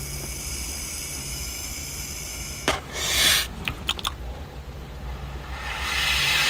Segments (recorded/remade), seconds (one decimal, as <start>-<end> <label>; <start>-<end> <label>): 0.0-1.2 recorded; 1.2-1.7 remade; 1.7-2.3 recorded; 2.3-3.0 remade; 3.0-6.5 recorded